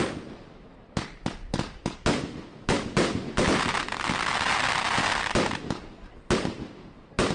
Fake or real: real